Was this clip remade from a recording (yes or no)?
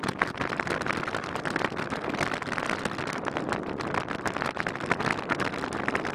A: no